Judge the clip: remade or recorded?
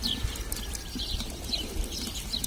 recorded